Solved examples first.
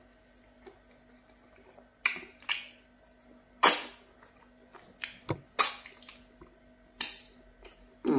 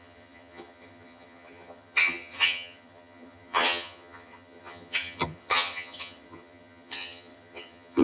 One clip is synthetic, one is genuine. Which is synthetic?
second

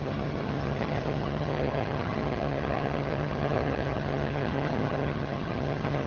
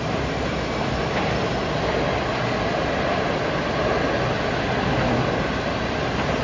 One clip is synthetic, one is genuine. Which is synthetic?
first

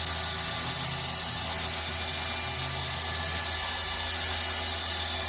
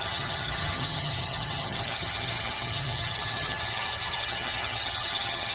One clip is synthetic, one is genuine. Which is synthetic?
second